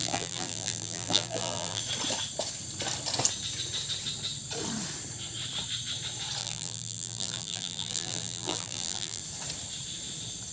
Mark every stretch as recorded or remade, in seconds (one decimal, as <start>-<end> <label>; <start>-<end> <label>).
0.0-1.8 remade; 1.8-6.4 recorded; 6.4-9.2 remade; 9.2-10.5 recorded

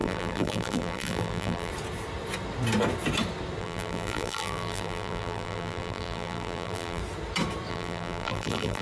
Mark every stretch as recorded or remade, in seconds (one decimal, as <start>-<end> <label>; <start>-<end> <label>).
0.0-1.7 remade; 1.7-3.6 recorded; 3.6-7.0 remade; 7.0-7.7 recorded; 7.7-8.8 remade

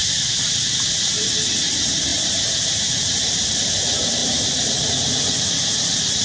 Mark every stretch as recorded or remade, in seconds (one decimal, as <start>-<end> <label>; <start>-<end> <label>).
0.0-1.3 remade; 1.3-2.1 recorded; 2.1-3.5 remade; 3.5-4.2 recorded; 4.2-4.9 remade; 4.9-6.2 recorded